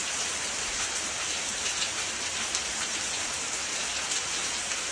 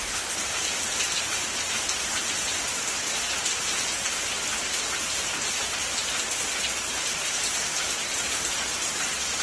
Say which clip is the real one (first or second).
second